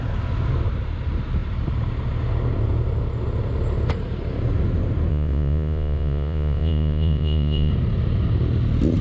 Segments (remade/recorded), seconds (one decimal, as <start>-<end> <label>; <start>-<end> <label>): 0.0-5.1 recorded; 5.1-7.7 remade; 7.7-9.0 recorded